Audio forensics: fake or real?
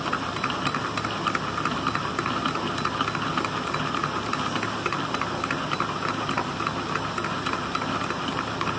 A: real